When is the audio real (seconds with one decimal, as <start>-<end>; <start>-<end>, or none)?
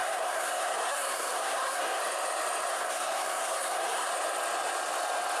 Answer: 2.0-2.7; 4.1-5.4